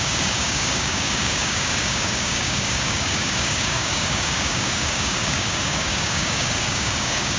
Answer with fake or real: fake